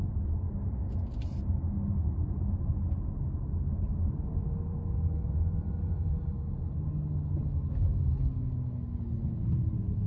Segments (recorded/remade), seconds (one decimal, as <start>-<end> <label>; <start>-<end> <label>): 0.0-10.1 recorded